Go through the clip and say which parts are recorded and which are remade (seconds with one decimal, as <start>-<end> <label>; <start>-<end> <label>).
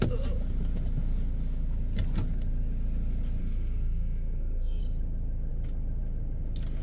0.0-3.4 recorded; 3.4-4.8 remade; 4.8-6.8 recorded